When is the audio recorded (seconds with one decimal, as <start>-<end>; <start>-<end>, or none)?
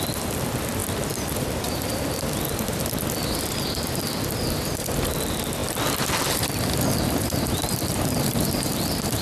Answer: none